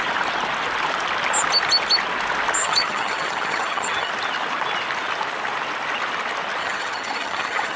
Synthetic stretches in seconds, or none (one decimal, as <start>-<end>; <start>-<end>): 2.6-4.1; 6.6-7.8